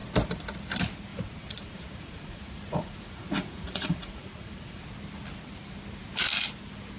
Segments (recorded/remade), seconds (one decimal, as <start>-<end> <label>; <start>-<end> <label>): 0.0-1.1 recorded; 1.1-4.8 remade; 4.8-7.0 recorded